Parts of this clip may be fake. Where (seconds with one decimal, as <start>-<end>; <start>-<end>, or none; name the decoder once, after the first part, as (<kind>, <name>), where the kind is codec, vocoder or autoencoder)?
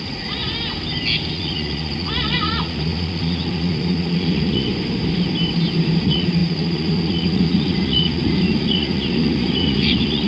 0.0-0.4 (vocoder, Vocos); 1.3-4.7; 6.0-10.3